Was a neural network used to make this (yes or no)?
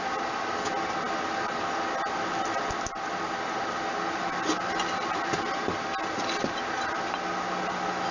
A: no